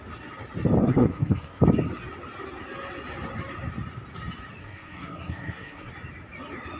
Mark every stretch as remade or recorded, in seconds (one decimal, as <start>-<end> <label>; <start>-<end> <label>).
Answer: 0.0-0.8 recorded; 0.8-1.6 remade; 1.6-4.6 recorded; 4.6-5.9 remade; 5.9-6.8 recorded

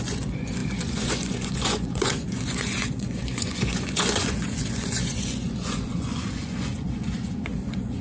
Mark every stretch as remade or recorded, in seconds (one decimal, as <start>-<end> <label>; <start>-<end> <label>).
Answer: 0.0-8.0 remade

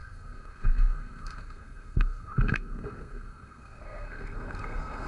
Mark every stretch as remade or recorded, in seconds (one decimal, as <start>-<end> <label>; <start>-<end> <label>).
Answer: 0.0-5.1 remade

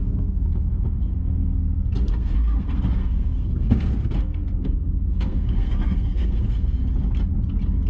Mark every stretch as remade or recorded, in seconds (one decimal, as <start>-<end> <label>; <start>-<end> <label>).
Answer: 0.0-6.8 remade; 6.8-7.9 recorded

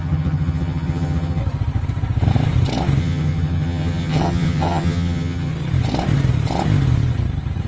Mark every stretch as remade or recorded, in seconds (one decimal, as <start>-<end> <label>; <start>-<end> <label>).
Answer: 0.0-1.4 remade; 1.4-3.0 recorded; 3.0-5.5 remade; 5.5-7.7 recorded

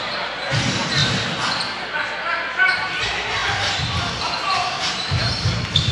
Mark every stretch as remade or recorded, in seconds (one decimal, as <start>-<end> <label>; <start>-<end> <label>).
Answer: 0.0-1.0 remade; 1.0-2.7 recorded; 2.7-5.9 remade

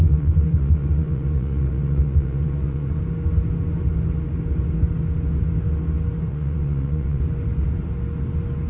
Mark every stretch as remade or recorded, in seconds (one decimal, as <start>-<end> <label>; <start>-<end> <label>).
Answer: 0.0-3.0 remade; 3.0-6.3 recorded; 6.3-7.2 remade; 7.2-8.7 recorded

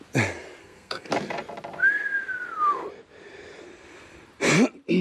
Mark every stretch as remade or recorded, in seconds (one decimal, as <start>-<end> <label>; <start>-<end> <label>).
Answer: 0.0-0.6 recorded; 0.6-1.1 remade; 1.1-5.0 recorded